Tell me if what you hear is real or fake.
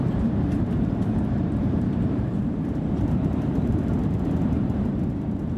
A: fake